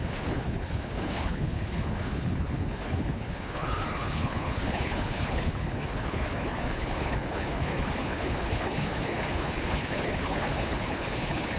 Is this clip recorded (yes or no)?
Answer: no